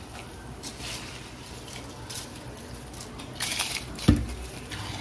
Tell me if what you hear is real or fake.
real